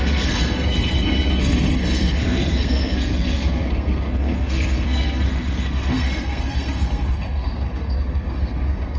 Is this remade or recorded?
remade